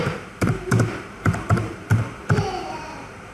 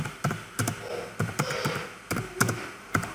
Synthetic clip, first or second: first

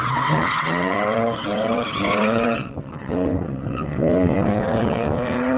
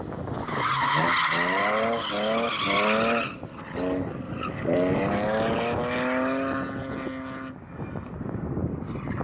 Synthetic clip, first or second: first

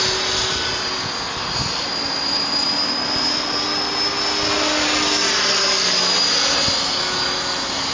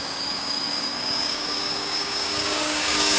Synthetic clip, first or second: second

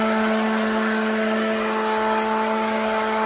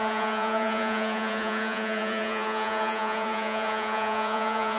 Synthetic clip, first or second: second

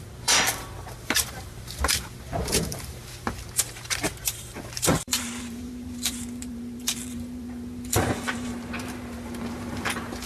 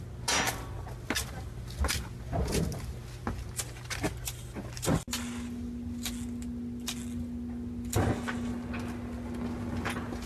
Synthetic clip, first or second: first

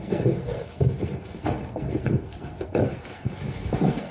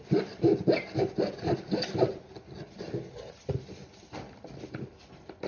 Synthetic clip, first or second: first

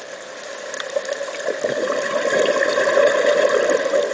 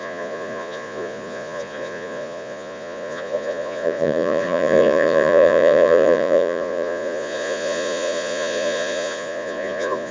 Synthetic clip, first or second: second